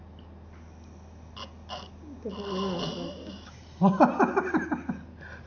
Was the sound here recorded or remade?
recorded